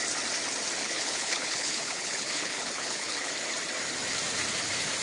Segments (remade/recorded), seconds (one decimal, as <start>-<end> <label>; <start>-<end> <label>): 0.0-0.8 recorded; 0.8-3.3 remade; 3.3-5.0 recorded